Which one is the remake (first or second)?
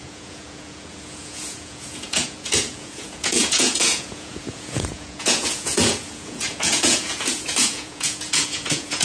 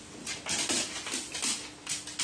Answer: first